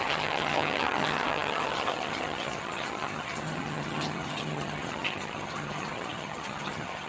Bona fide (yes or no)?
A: no